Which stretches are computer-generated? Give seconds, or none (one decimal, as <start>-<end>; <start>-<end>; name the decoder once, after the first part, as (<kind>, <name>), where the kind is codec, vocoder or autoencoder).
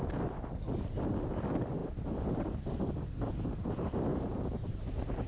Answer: 1.8-2.9 (vocoder, BigVGAN v2); 4.1-5.3